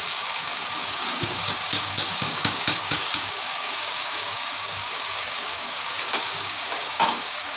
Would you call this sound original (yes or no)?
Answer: no